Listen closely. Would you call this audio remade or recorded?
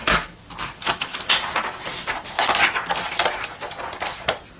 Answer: recorded